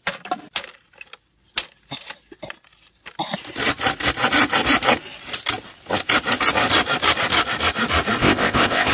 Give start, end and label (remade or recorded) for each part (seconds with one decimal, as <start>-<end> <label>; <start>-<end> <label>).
0.0-8.2 recorded; 8.2-8.9 remade